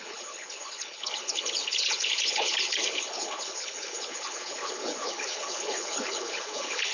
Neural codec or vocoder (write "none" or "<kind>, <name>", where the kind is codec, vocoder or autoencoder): codec, HILCodec